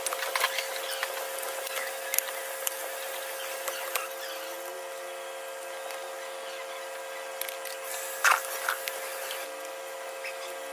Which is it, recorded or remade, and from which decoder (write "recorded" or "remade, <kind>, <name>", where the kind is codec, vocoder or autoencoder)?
recorded